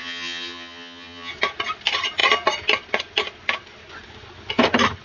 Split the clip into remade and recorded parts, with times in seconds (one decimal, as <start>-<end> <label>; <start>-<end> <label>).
0.0-1.3 remade; 1.3-5.0 recorded